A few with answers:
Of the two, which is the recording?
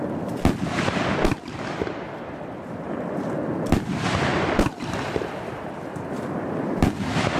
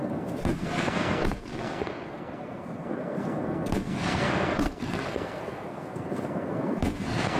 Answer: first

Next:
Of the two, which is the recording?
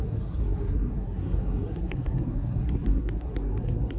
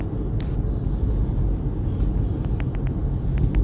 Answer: second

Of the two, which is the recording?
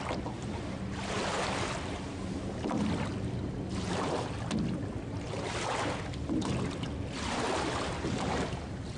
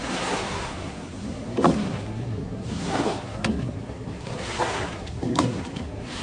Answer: first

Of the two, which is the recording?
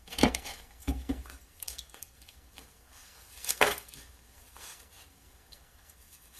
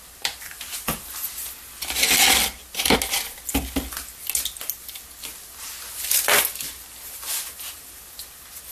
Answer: second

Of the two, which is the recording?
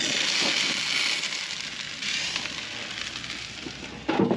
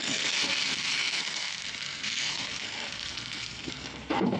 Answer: first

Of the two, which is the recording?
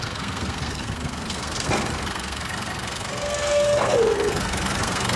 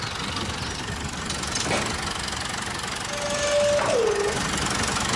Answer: second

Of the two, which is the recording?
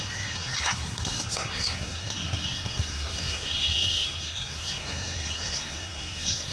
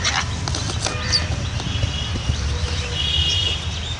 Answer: second